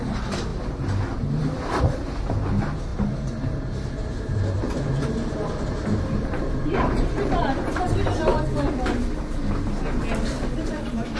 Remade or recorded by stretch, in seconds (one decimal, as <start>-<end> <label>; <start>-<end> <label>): 0.0-0.5 remade; 0.5-1.2 recorded; 1.2-8.3 remade; 8.3-10.6 recorded; 10.6-11.2 remade